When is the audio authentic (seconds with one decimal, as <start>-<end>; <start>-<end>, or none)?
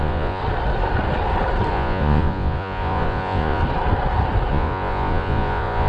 0.4-1.7; 3.6-4.5